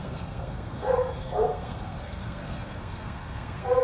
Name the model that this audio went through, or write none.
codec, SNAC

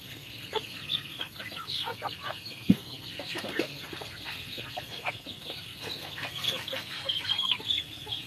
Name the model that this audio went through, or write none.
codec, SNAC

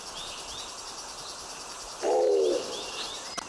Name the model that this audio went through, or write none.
none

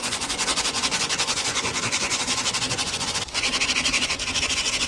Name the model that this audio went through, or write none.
vocoder, Vocos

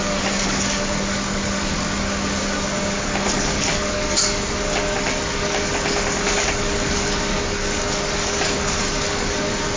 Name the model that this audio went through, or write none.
codec, DAC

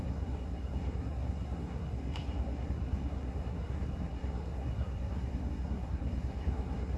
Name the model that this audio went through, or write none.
codec, SNAC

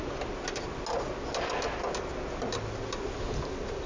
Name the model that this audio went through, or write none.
none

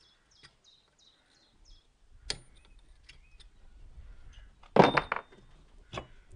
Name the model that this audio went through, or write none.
none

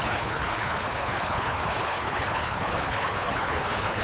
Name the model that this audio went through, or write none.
codec, HILCodec